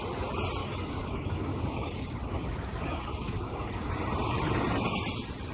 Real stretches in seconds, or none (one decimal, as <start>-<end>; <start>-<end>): 0.0-0.6; 3.9-5.5